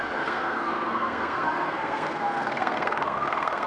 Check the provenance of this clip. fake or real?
fake